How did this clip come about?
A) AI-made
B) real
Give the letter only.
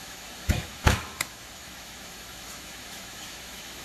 A